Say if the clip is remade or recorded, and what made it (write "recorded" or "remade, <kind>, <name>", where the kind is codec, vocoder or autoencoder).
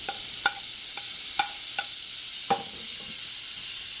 recorded